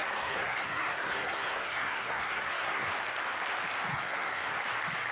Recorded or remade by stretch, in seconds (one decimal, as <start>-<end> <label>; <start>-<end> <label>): 0.0-2.9 remade; 2.9-3.9 recorded; 3.9-4.6 remade; 4.6-5.1 recorded